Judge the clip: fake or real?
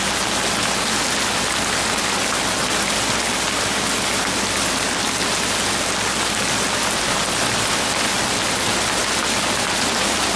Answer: real